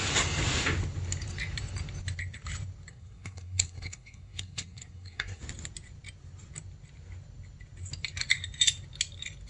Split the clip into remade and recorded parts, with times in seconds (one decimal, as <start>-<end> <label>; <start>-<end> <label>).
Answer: 0.0-2.9 recorded; 2.9-5.4 remade; 5.4-9.5 recorded